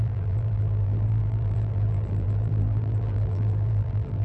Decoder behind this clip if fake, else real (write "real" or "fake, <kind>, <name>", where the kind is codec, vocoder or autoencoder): fake, vocoder, BigVGAN v2